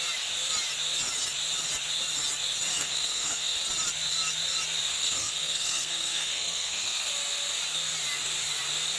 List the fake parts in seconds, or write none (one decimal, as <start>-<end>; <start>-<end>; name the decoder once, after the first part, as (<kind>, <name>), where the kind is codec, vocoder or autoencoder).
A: 2.7-3.6 (codec, SNAC); 4.9-7.1